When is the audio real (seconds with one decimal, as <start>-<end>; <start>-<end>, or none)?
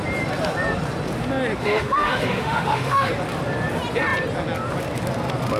0.0-1.6; 3.1-5.6